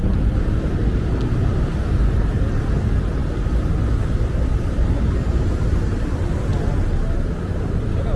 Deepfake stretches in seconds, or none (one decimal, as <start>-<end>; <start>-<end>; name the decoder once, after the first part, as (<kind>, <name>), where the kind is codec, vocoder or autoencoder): none